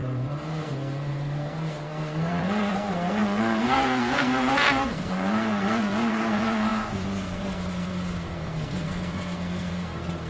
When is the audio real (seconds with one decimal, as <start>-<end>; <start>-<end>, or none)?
none